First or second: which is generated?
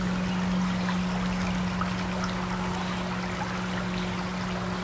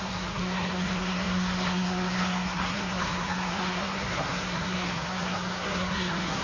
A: second